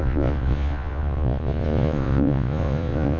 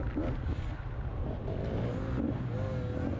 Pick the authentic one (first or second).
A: second